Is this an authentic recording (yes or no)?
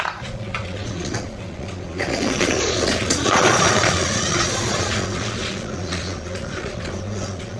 no